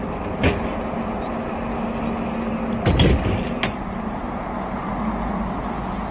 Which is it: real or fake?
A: real